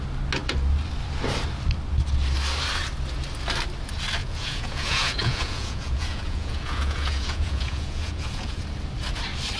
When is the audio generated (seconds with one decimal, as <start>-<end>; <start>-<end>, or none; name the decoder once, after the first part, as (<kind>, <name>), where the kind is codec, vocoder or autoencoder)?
4.2-8.6 (vocoder, Vocos)

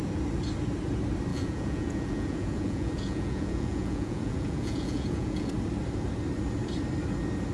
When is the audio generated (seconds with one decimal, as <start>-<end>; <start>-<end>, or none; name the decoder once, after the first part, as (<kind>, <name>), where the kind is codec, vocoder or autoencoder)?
1.3-5.5 (vocoder, Vocos)

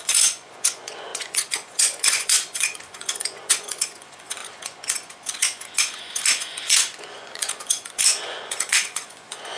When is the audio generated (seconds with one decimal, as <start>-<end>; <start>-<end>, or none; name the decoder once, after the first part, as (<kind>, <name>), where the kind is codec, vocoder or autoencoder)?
0.0-9.6 (vocoder, Vocos)

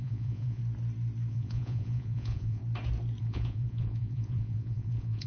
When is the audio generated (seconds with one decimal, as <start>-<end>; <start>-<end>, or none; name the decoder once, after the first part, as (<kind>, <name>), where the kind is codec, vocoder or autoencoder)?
0.0-0.6 (vocoder, Vocos); 1.3-2.6; 3.2-5.3